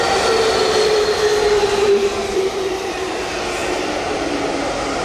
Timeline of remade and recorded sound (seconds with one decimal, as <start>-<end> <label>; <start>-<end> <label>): 0.0-1.3 recorded; 1.3-3.2 remade; 3.2-5.0 recorded